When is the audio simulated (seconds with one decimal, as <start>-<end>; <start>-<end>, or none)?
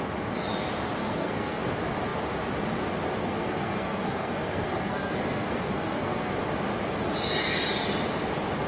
1.0-1.6; 3.2-6.3